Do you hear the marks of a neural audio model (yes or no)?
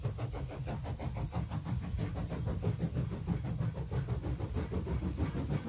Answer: no